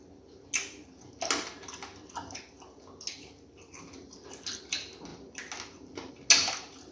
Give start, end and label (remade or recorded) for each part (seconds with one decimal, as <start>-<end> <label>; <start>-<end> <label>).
0.0-6.9 recorded